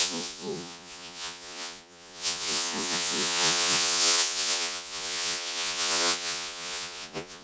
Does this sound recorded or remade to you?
remade